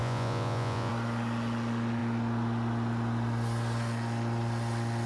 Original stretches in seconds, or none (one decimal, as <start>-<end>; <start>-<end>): 0.9-5.1